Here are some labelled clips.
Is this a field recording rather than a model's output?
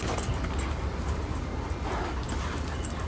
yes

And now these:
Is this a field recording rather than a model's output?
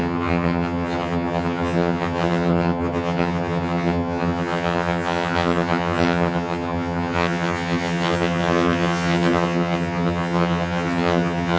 no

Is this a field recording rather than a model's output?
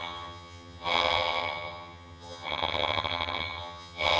no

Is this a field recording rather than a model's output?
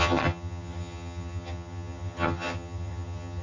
no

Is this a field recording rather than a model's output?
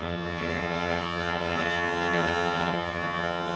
no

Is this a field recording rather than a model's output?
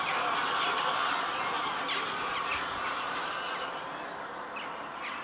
yes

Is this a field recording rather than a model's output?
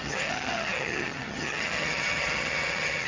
no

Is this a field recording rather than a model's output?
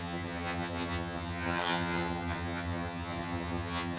no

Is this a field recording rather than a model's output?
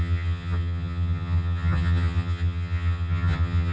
no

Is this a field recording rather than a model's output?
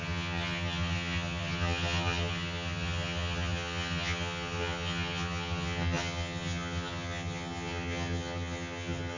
no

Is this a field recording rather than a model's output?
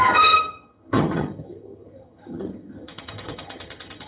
no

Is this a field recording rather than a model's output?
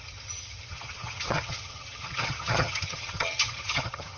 no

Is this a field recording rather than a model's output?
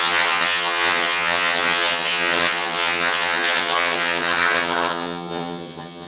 no